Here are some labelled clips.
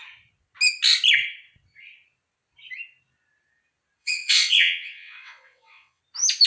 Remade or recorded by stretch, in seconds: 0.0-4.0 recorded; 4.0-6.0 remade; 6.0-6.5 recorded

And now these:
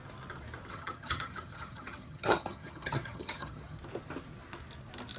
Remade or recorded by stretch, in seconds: 0.0-0.7 recorded; 0.7-3.8 remade; 3.8-5.2 recorded

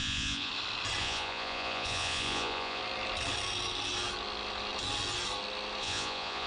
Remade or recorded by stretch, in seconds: 0.0-0.5 remade; 0.5-1.0 recorded; 1.0-2.8 remade; 2.8-5.8 recorded; 5.8-6.5 remade

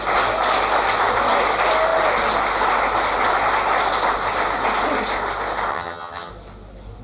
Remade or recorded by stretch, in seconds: 0.0-5.7 recorded; 5.7-6.3 remade; 6.3-7.0 recorded

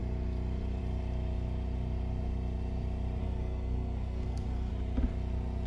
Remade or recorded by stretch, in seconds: 0.0-3.2 recorded; 3.2-4.7 remade; 4.7-5.7 recorded

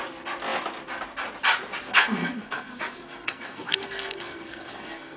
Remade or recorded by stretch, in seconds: 0.0-1.9 recorded; 1.9-5.2 remade

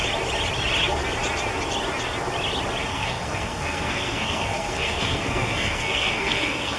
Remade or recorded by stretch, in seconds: 0.0-2.9 recorded; 2.9-6.8 remade